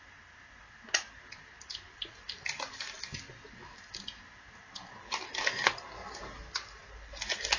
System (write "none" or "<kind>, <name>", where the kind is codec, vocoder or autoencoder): none